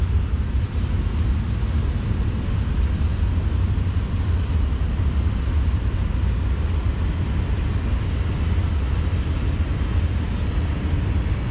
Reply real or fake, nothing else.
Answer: real